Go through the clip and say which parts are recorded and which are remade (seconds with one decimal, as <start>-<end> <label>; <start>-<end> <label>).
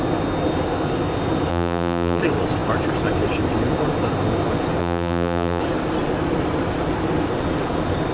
0.0-1.5 recorded; 1.5-2.2 remade; 2.2-4.8 recorded; 4.8-5.6 remade; 5.6-8.1 recorded